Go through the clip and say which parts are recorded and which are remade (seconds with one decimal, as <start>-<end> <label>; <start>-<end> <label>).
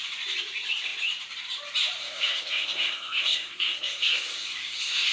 0.0-2.0 recorded; 2.0-5.1 remade